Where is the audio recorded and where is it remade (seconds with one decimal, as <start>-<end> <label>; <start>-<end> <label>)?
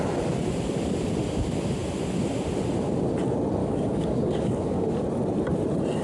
0.0-3.6 recorded; 3.6-5.0 remade; 5.0-6.0 recorded